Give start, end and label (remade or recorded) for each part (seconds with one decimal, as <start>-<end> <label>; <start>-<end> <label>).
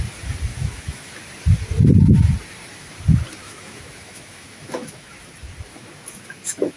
0.0-0.5 recorded; 0.5-1.1 remade; 1.1-3.4 recorded; 3.4-5.1 remade; 5.1-5.7 recorded; 5.7-6.8 remade